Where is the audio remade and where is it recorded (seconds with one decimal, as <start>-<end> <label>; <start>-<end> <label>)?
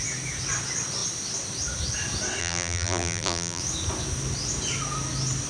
0.0-2.4 recorded; 2.4-3.6 remade; 3.6-5.5 recorded